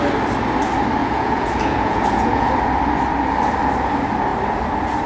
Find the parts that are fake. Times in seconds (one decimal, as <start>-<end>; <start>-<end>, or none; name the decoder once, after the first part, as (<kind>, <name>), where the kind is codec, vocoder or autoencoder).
1.0-2.5 (vocoder, Vocos)